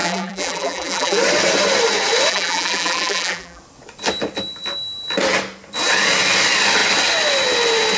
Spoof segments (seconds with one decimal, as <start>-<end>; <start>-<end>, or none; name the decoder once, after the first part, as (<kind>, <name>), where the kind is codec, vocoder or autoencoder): 0.0-1.2 (vocoder, BigVGAN v2); 2.3-3.6